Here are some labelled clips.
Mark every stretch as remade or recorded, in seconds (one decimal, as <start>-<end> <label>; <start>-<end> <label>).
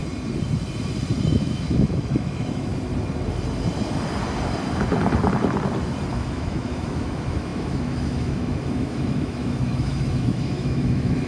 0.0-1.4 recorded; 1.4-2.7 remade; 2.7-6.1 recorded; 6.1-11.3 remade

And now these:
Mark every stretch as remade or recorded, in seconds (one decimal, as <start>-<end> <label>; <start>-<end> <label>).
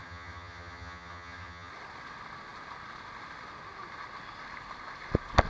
0.0-1.7 remade; 1.7-5.5 recorded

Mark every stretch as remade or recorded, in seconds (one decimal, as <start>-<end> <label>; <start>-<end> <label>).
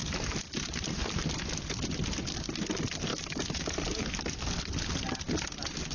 0.0-3.1 recorded; 3.1-3.7 remade; 3.7-5.9 recorded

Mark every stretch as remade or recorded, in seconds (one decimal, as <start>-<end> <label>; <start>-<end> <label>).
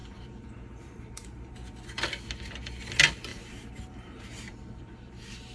0.0-1.5 remade; 1.5-3.3 recorded; 3.3-5.1 remade; 5.1-5.5 recorded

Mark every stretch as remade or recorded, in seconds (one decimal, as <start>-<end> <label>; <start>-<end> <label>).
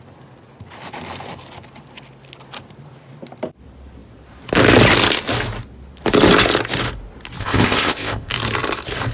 0.0-7.4 recorded; 7.4-8.3 remade; 8.3-9.1 recorded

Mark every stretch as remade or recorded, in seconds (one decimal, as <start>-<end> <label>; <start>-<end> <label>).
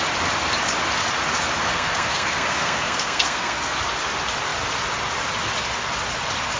0.0-1.6 recorded; 1.6-3.8 remade; 3.8-6.6 recorded